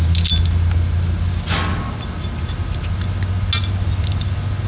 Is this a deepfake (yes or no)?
no